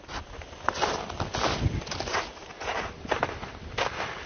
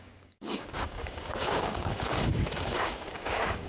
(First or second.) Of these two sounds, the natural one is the first